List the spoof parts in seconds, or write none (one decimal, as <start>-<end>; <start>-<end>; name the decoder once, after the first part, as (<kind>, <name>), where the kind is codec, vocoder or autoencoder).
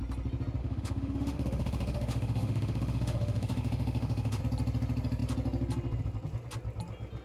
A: 0.6-4.4 (autoencoder, DAC-VAE)